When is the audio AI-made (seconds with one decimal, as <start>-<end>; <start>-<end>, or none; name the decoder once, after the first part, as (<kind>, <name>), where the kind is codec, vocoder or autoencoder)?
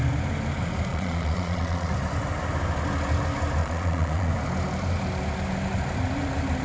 0.9-1.9 (vocoder, Vocos); 3.6-4.3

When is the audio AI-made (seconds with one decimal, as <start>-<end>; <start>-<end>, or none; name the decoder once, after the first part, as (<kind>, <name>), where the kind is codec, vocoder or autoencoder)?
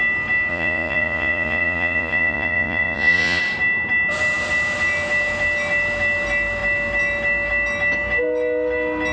0.5-3.4 (vocoder, Vocos)